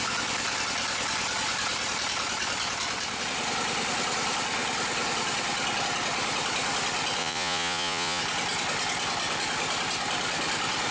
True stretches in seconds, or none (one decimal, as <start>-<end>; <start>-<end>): 0.0-7.2; 8.2-10.9